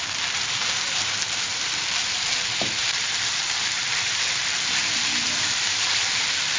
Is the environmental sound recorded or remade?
remade